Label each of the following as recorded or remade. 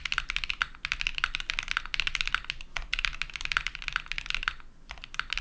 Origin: recorded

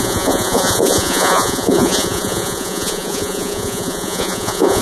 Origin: remade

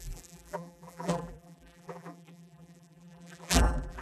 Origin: remade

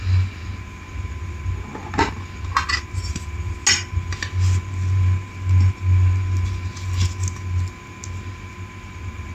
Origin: recorded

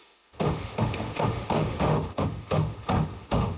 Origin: remade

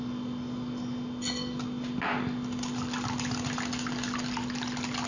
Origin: recorded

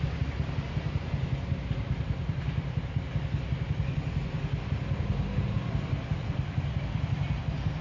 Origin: recorded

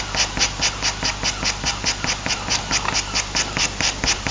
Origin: recorded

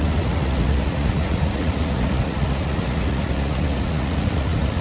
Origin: remade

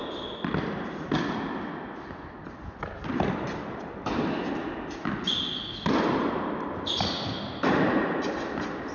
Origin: recorded